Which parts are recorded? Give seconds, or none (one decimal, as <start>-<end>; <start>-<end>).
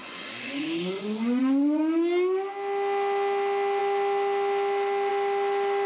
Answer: 1.8-5.9